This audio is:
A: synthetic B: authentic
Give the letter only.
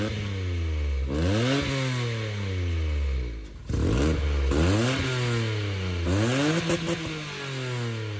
B